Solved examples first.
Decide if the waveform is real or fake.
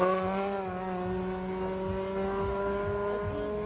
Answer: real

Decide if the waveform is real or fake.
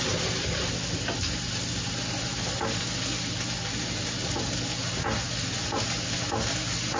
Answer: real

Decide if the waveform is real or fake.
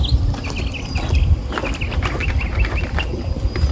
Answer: real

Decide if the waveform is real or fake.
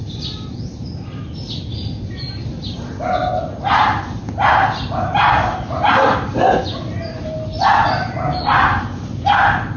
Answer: real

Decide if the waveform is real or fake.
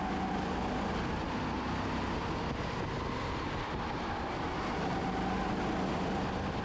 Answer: real